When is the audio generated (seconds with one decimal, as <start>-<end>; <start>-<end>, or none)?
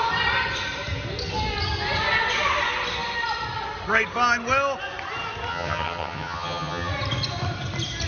5.5-6.9